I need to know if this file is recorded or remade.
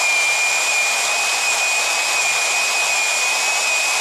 recorded